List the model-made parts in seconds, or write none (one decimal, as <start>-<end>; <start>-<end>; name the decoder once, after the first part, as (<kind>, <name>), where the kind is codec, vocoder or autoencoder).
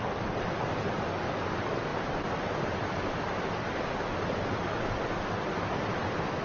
none